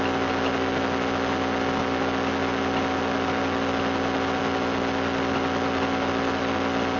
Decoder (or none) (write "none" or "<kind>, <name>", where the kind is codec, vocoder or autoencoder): none